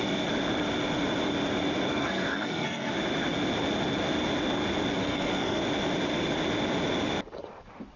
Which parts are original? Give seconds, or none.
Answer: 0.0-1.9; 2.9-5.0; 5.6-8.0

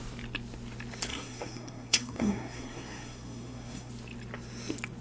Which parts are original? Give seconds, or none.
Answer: 0.0-1.1; 3.9-5.0